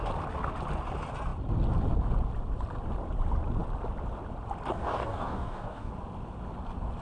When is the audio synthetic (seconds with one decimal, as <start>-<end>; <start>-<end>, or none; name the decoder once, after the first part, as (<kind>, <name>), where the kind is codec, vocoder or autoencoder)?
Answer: 4.7-5.9 (codec, DAC)

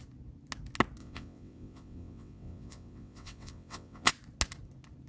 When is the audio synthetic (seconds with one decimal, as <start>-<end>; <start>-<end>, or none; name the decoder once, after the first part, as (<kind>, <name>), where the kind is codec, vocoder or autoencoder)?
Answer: 1.0-4.1 (vocoder, WaveNeXt)

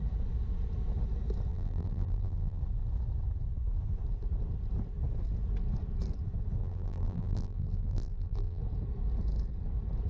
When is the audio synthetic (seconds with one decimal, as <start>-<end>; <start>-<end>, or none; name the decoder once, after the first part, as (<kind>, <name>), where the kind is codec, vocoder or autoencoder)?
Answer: 1.5-2.6 (vocoder, BigVGAN v2); 6.6-8.6

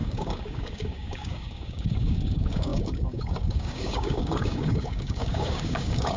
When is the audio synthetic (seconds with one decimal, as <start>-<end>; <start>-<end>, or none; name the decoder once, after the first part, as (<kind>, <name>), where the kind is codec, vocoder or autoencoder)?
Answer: 0.0-6.2 (codec, DAC)

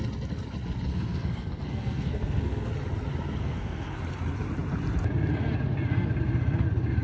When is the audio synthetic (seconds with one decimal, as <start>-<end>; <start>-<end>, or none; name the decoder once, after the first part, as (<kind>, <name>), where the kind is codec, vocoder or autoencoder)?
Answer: 0.9-2.7 (codec, SNAC); 3.4-4.0

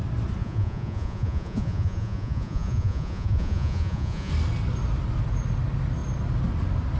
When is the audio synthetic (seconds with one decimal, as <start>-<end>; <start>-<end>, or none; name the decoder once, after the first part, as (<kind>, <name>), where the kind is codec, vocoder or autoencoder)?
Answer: 0.4-4.3 (vocoder, Vocos)